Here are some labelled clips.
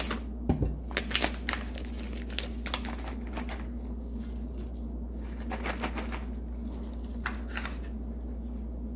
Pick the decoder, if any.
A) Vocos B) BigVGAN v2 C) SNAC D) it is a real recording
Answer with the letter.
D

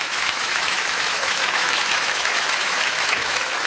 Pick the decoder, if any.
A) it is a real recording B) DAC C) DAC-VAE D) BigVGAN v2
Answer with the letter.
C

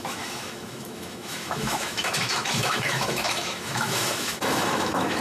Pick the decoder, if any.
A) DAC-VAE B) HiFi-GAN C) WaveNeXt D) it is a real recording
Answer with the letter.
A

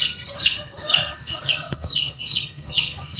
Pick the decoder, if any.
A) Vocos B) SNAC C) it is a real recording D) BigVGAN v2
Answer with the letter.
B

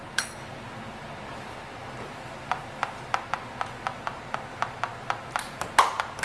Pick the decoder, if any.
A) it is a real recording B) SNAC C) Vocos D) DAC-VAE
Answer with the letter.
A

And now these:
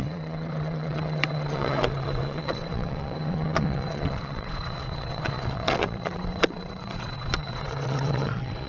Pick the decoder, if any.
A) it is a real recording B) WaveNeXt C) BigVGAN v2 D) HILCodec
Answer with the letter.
B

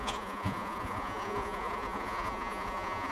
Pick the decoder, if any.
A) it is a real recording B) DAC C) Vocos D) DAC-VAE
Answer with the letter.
C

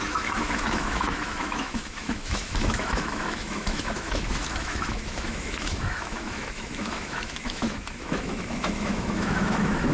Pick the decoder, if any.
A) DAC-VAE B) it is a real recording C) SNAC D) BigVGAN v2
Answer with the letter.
A